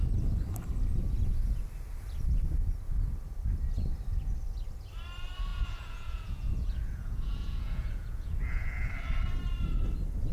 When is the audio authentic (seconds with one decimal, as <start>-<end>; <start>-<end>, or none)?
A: 0.0-5.5; 8.9-10.3